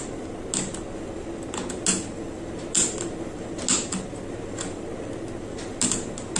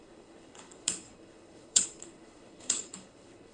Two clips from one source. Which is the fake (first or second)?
second